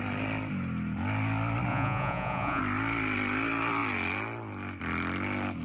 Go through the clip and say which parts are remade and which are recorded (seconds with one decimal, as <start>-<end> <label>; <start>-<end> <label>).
0.0-1.7 recorded; 1.7-2.6 remade; 2.6-5.6 recorded